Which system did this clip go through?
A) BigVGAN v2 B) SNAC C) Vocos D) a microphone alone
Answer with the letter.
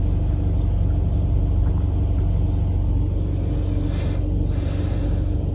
D